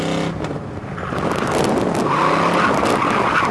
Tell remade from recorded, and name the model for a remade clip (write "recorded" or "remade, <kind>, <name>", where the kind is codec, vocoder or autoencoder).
recorded